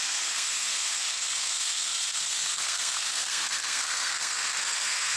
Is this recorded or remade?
remade